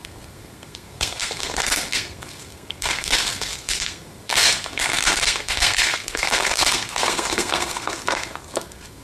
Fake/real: fake